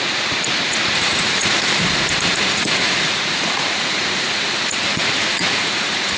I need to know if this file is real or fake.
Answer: fake